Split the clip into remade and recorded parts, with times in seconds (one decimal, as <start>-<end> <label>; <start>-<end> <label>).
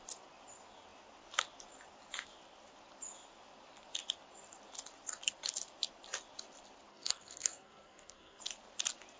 0.0-6.9 recorded; 6.9-8.4 remade; 8.4-9.2 recorded